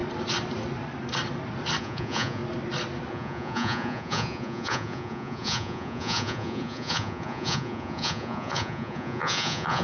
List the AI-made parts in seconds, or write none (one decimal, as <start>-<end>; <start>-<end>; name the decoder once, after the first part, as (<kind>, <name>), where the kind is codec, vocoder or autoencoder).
1.8-2.4 (vocoder, Vocos); 3.1-9.8